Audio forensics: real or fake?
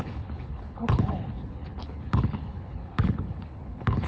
fake